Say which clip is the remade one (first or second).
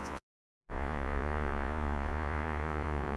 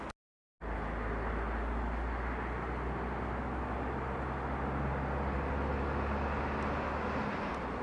first